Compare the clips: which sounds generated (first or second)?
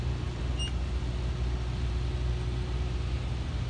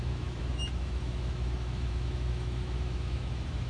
second